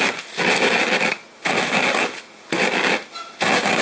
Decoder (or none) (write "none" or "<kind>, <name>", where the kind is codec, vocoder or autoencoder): none